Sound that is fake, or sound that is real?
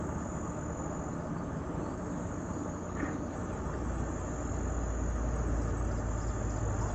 real